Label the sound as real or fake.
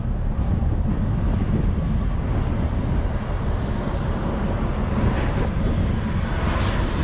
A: real